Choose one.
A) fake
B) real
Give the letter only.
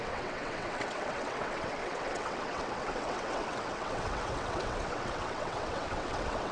A